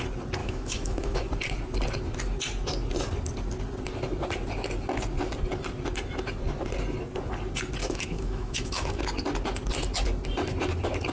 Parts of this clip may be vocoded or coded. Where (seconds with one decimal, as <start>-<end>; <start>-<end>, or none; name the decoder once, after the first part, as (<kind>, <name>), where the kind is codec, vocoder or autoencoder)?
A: 0.4-1.3 (autoencoder, DAC-VAE); 7.8-9.0